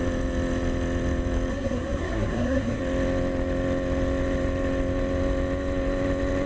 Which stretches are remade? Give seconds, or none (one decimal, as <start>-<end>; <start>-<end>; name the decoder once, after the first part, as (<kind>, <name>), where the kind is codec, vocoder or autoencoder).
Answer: 1.5-2.8 (codec, SNAC)